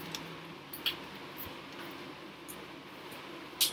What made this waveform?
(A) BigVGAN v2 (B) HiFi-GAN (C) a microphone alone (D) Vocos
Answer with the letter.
C